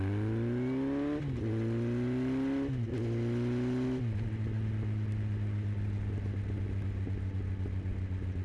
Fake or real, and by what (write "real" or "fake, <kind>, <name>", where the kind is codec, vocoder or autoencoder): real